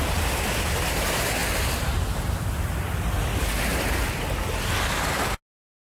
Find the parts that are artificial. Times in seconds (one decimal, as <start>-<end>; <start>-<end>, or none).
none